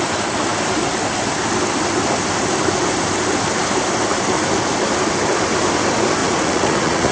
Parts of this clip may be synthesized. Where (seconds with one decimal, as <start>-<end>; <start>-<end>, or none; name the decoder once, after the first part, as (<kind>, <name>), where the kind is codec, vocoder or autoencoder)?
6.2-7.1 (vocoder, Vocos)